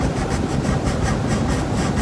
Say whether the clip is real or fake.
real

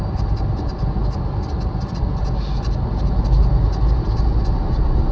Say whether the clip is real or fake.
real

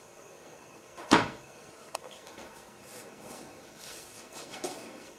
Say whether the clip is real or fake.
fake